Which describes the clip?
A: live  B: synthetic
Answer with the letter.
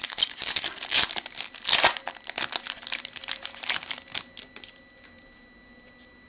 A